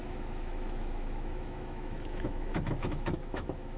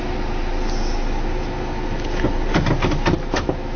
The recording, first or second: second